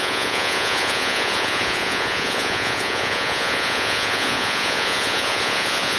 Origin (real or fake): fake